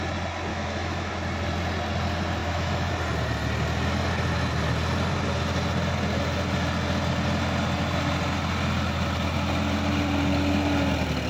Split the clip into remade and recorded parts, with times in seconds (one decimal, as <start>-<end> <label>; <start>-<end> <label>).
0.0-0.5 recorded; 0.5-1.1 remade; 1.1-2.4 recorded; 2.4-2.9 remade; 2.9-11.3 recorded